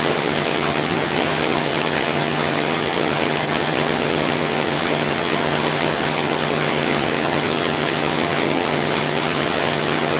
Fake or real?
fake